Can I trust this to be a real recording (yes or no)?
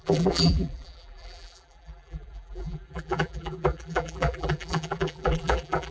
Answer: no